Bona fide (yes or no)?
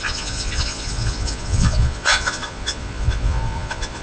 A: no